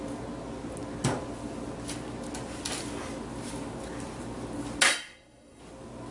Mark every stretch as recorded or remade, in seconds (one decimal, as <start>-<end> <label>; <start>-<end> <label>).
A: 0.0-4.9 recorded; 4.9-5.6 remade; 5.6-6.1 recorded